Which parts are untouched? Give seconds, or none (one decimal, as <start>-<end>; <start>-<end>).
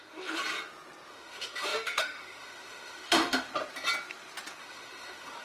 0.4-1.1; 3.5-4.6